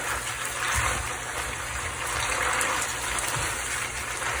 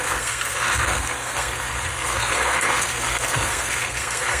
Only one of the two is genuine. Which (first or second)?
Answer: first